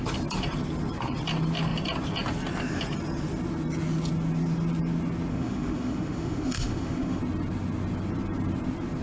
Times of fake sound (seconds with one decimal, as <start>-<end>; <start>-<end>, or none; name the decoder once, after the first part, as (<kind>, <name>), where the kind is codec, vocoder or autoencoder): 5.3-7.2 (autoencoder, DAC-VAE)